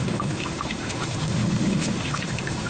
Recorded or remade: remade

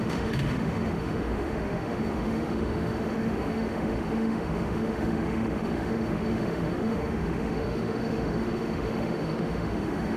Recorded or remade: remade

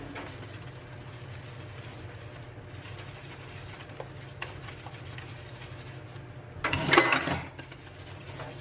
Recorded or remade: recorded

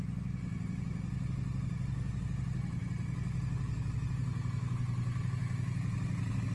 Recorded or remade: recorded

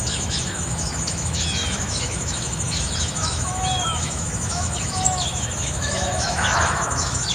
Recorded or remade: remade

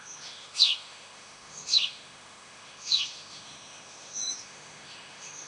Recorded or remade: remade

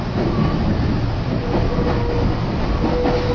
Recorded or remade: recorded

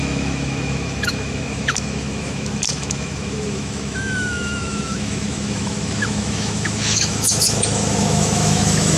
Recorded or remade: remade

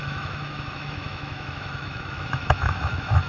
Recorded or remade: remade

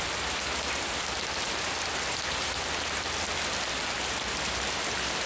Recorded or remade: recorded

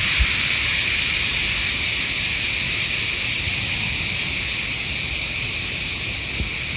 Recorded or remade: recorded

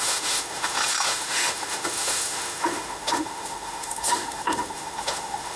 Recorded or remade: remade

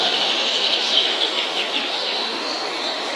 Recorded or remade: remade